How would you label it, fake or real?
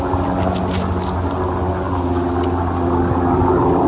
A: real